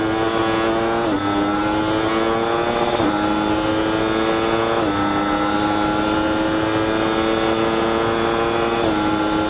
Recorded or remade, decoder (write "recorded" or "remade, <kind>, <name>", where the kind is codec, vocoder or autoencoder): recorded